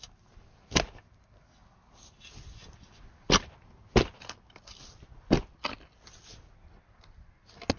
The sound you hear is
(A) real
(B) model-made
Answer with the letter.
A